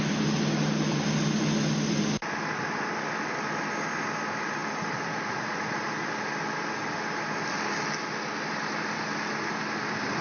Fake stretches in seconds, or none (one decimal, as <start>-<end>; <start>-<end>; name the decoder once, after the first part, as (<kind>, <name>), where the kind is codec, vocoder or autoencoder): none